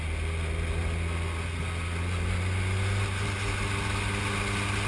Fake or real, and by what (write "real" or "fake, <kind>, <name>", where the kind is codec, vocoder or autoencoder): real